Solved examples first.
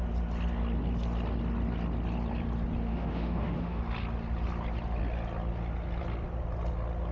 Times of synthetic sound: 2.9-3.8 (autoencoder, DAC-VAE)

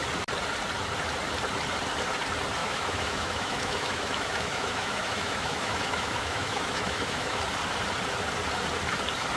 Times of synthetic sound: 2.6-7.4 (autoencoder, DAC-VAE)

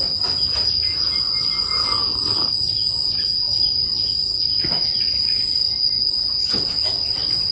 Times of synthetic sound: none

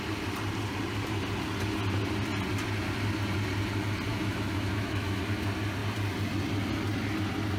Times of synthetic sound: 4.1-5.2 (autoencoder, DAC-VAE)